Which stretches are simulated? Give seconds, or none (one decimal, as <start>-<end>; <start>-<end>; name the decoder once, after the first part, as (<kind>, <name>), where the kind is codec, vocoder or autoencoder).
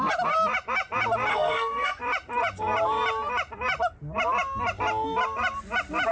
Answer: 1.3-2.0 (codec, SNAC)